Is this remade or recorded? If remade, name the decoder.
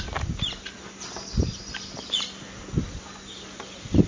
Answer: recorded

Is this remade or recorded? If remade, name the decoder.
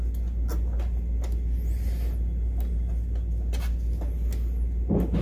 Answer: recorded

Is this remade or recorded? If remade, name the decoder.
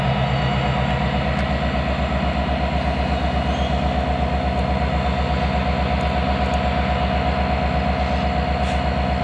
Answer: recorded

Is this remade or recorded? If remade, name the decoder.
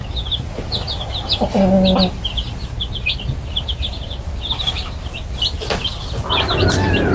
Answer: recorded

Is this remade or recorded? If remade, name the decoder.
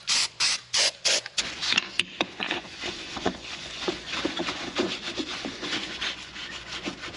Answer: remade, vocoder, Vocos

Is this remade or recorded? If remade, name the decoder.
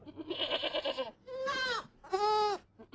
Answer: recorded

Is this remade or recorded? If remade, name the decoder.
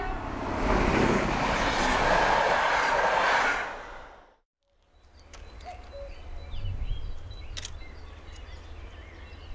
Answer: recorded